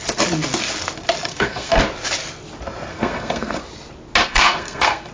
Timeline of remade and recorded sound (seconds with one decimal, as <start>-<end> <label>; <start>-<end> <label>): 0.0-1.3 recorded; 1.3-1.8 remade; 1.8-2.9 recorded; 2.9-3.6 remade; 3.6-4.2 recorded; 4.2-5.1 remade